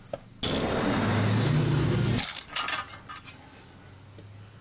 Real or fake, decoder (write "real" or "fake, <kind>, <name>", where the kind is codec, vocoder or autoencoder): real